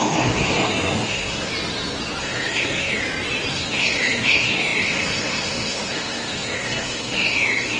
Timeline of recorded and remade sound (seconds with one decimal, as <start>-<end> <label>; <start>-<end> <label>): 0.0-1.5 remade; 1.5-2.2 recorded; 2.2-3.0 remade; 3.0-3.5 recorded; 3.5-7.8 remade